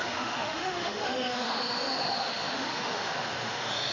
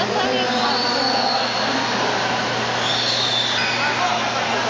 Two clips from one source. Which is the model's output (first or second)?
first